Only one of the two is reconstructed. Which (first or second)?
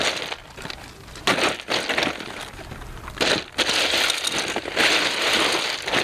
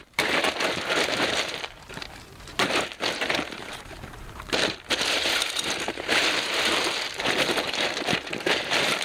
second